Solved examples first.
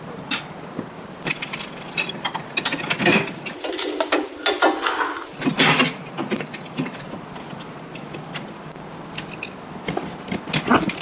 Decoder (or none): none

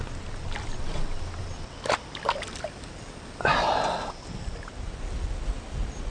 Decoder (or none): none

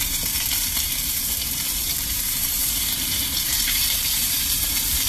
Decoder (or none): vocoder, BigVGAN v2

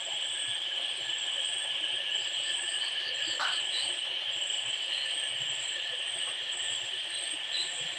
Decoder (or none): vocoder, BigVGAN v2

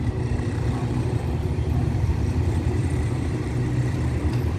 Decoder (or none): vocoder, BigVGAN v2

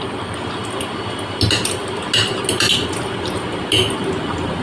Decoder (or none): none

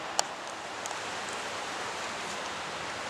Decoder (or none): none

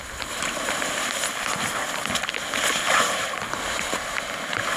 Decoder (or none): none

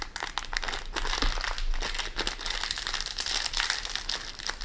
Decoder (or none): none